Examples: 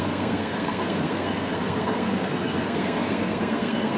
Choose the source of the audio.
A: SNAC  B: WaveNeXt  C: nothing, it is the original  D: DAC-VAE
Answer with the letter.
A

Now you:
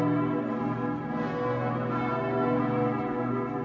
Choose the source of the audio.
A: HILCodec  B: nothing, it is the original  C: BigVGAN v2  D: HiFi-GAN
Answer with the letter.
B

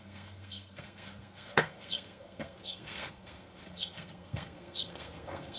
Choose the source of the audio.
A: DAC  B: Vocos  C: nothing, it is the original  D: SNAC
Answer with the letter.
D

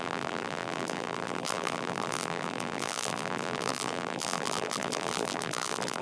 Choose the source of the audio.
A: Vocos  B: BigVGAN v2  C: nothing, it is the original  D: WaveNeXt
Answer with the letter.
B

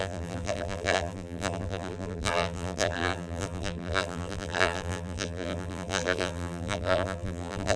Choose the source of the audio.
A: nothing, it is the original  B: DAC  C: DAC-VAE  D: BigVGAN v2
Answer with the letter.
D